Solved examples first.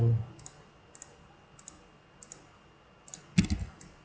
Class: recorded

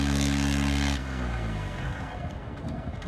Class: remade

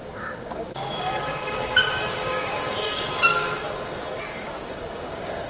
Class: remade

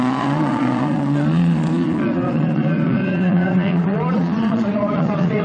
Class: remade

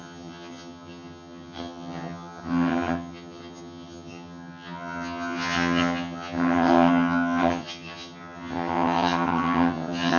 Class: remade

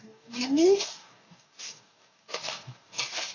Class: remade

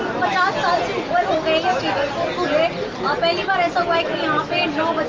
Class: recorded